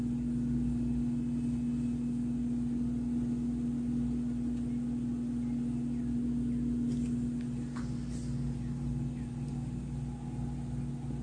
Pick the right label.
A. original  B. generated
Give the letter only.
A